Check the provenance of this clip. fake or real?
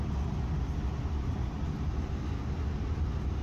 real